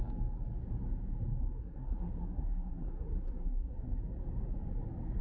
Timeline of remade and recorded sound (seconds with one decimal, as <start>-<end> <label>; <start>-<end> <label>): 0.0-1.4 recorded; 1.4-4.0 remade; 4.0-5.2 recorded